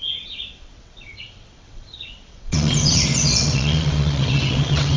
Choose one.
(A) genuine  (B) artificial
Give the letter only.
B